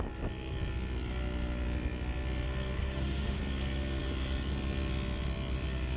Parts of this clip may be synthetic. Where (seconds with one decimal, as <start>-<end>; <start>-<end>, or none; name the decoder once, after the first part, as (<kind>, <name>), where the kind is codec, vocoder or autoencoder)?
2.8-3.4 (autoencoder, DAC-VAE)